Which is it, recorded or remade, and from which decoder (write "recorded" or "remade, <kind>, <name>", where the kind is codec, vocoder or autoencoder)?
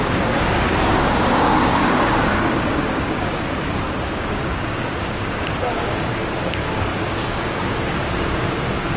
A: remade, codec, DAC